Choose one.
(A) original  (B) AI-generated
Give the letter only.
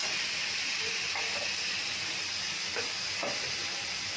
A